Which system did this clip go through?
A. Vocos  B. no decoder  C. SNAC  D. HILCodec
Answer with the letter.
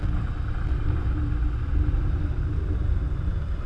B